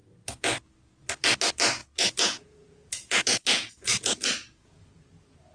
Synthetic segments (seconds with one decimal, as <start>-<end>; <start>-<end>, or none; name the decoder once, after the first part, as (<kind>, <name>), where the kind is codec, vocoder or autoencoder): 1.8-4.9 (vocoder, Vocos)